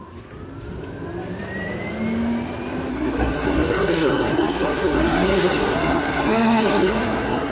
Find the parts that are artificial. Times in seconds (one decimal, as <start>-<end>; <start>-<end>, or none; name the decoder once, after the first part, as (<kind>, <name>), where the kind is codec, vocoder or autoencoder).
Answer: 2.9-7.5 (codec, SNAC)